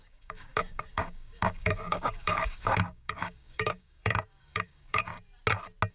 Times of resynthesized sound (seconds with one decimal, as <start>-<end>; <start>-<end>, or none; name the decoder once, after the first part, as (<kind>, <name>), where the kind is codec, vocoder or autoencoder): 0.0-5.1 (codec, DAC)